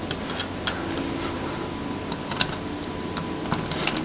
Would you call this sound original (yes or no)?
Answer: yes